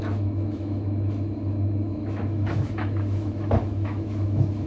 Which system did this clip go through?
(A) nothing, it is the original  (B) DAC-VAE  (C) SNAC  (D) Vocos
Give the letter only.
B